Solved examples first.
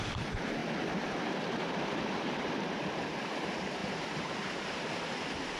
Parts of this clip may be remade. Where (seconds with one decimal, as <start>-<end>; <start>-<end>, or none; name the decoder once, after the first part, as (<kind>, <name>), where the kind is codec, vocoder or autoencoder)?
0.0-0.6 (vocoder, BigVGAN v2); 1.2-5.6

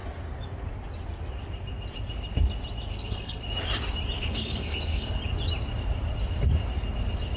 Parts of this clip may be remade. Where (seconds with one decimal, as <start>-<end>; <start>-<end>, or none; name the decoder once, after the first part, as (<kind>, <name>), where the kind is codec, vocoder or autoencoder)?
2.9-3.4 (codec, SNAC); 4.3-5.2

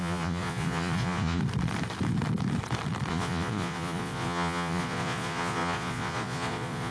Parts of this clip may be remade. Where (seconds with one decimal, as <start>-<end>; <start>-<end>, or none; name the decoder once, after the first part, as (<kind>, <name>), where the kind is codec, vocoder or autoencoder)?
0.0-1.4 (vocoder, Vocos); 3.1-6.9

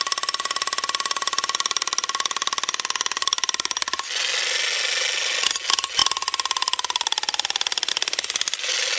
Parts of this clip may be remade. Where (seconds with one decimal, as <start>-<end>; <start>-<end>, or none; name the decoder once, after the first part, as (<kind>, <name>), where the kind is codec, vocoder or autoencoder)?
none

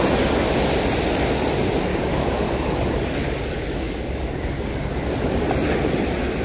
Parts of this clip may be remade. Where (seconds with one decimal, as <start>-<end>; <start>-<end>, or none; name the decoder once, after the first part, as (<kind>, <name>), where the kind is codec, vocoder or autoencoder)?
1.9-5.1 (codec, DAC)

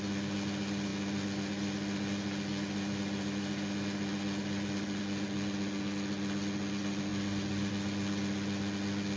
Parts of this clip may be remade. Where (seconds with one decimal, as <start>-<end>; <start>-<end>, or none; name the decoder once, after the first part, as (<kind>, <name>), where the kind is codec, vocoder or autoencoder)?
none